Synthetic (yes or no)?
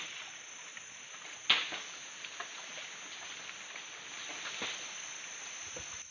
no